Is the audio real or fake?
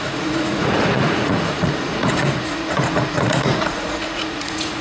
fake